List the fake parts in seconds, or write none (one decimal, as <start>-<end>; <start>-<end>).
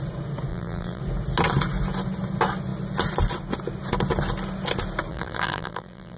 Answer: 0.5-1.0; 5.1-6.2